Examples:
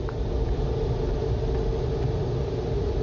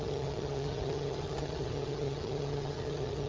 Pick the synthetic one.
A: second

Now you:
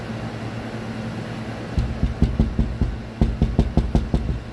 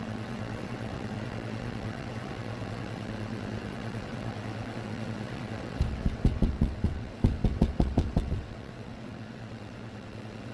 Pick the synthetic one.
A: second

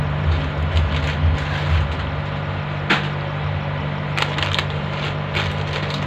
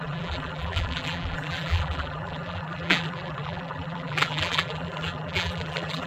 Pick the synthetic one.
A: second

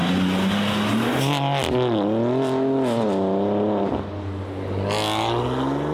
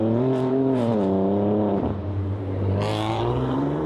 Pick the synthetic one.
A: second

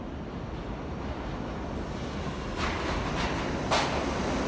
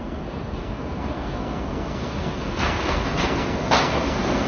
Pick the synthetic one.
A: second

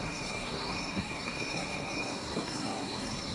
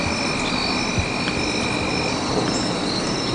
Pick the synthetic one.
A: first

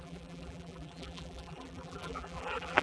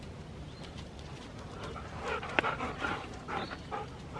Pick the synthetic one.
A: first